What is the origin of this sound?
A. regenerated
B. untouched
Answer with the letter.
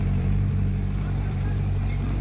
A